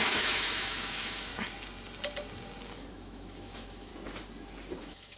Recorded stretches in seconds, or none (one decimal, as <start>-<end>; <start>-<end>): 1.3-2.9; 3.9-4.8